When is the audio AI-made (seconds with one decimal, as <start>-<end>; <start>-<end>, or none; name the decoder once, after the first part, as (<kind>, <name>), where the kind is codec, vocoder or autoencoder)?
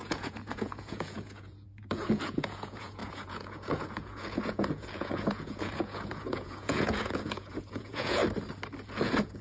0.0-8.2 (vocoder, Vocos); 9.0-9.4